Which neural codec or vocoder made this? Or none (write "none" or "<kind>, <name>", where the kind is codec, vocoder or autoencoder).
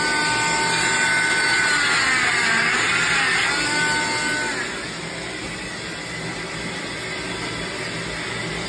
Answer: none